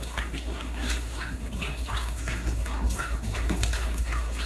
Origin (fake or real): fake